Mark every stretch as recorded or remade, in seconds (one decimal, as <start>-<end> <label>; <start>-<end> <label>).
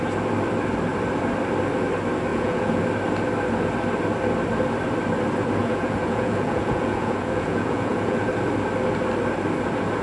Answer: 0.0-2.3 recorded; 2.3-2.8 remade; 2.8-5.6 recorded; 5.6-8.3 remade; 8.3-10.0 recorded